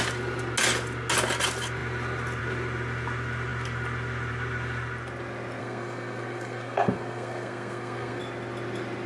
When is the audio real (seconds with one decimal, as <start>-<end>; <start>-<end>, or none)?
0.0-5.6; 8.2-9.1